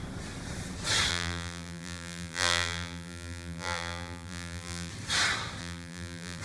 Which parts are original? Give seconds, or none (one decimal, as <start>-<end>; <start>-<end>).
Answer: 0.0-1.1; 4.9-5.6